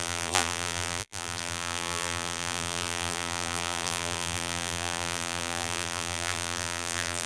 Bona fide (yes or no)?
no